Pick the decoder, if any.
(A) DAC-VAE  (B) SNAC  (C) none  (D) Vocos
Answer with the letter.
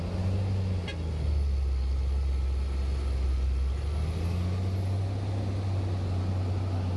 C